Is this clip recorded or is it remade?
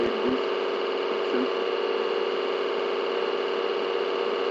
recorded